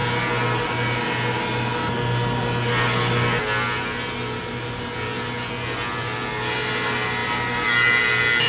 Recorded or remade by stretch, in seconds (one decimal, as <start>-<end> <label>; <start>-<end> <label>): 0.0-8.5 recorded